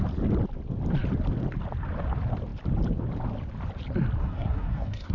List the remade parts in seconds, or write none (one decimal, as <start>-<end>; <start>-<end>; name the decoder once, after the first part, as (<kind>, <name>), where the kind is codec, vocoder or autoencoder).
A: 4.2-5.1 (codec, SNAC)